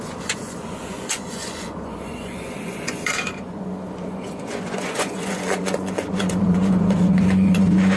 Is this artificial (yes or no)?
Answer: yes